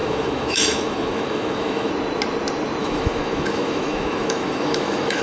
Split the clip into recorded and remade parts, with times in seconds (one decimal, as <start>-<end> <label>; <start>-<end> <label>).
0.0-1.9 remade; 1.9-2.8 recorded; 2.8-5.2 remade